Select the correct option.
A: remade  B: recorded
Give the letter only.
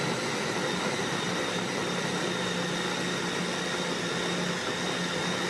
B